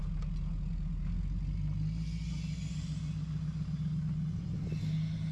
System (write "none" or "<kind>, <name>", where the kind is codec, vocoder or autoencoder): none